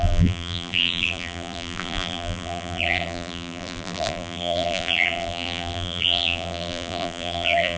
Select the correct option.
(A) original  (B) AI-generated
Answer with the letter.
B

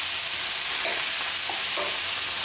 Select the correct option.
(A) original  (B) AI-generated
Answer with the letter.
A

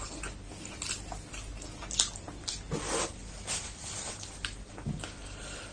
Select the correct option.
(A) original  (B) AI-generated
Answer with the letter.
A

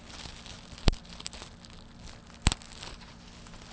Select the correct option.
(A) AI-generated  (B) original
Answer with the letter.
B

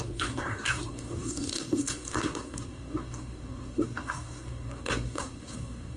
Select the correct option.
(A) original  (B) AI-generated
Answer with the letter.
B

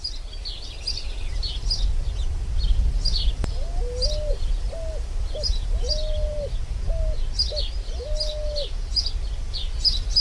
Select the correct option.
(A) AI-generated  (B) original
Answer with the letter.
B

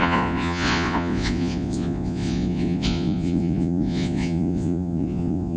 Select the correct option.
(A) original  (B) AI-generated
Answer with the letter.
B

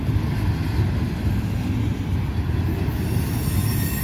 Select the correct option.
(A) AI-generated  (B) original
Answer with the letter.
B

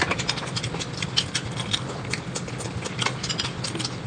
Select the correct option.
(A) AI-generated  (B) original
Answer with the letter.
B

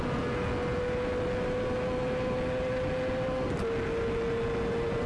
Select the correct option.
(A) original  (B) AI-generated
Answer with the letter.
A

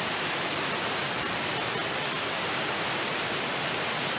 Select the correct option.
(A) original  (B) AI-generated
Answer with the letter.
A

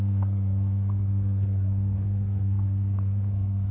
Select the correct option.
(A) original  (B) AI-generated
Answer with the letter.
B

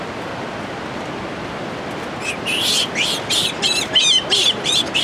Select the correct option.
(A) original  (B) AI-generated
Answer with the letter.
A